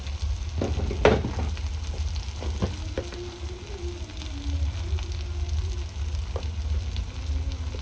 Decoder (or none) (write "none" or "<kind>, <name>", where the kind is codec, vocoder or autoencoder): none